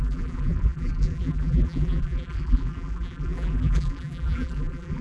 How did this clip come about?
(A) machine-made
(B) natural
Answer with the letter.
A